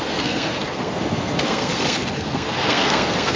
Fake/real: fake